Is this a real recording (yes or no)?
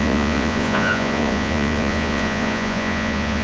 no